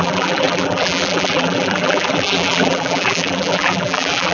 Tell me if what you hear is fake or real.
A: fake